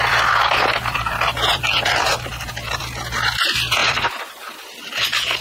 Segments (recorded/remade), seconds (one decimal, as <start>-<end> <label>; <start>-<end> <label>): 0.0-1.5 recorded; 1.5-2.1 remade; 2.1-3.8 recorded; 3.8-5.4 remade